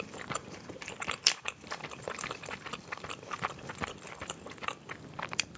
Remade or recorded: remade